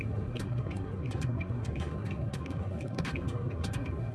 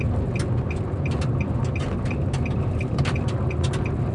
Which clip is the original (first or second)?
second